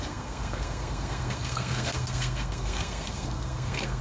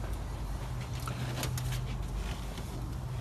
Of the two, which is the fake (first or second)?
first